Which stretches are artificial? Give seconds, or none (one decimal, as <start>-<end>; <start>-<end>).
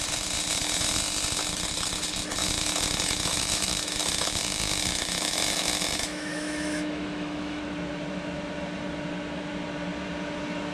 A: 0.5-1.0; 2.4-7.6